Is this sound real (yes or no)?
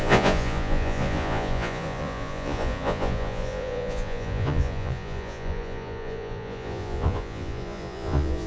no